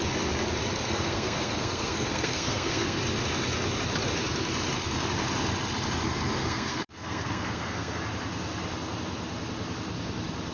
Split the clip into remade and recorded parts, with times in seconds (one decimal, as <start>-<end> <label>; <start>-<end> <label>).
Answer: 0.0-0.9 recorded; 0.9-3.0 remade; 3.0-6.4 recorded; 6.4-8.0 remade; 8.0-10.5 recorded

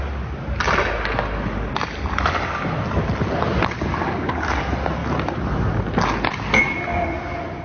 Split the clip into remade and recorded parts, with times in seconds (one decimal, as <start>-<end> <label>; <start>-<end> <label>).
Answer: 0.0-7.6 recorded

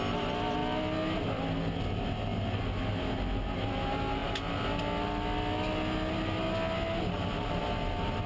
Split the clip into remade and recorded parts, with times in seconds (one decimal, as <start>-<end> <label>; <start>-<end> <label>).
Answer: 0.0-8.3 recorded

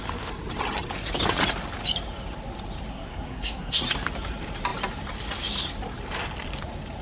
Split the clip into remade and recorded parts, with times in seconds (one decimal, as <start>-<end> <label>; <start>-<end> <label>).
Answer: 0.0-2.9 recorded; 2.9-3.8 remade; 3.8-7.0 recorded

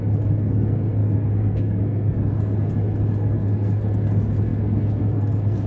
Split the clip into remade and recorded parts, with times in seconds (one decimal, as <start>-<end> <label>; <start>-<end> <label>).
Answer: 0.0-5.7 remade